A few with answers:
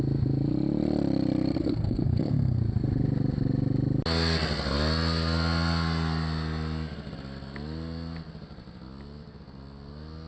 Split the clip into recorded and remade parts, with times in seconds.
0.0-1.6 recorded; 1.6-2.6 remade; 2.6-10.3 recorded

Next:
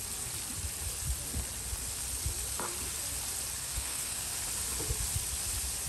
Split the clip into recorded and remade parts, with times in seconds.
0.0-3.6 recorded; 3.6-4.3 remade; 4.3-5.9 recorded

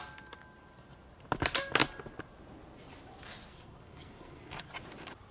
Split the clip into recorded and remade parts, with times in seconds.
0.0-3.5 recorded; 3.5-4.7 remade; 4.7-5.3 recorded

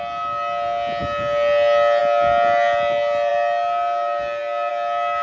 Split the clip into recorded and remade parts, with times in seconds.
0.0-5.2 recorded

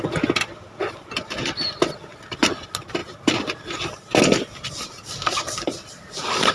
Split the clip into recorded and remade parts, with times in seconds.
0.0-6.5 recorded

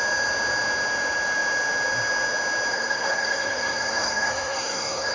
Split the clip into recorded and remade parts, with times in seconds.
0.0-2.7 recorded; 2.7-5.1 remade

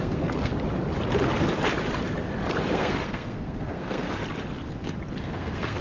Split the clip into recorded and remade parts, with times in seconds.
0.0-0.5 remade; 0.5-2.7 recorded; 2.7-4.2 remade; 4.2-5.2 recorded; 5.2-5.8 remade